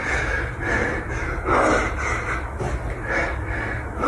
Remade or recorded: recorded